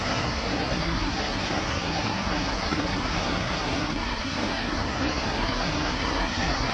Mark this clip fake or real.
fake